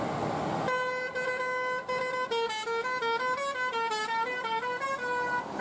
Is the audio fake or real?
real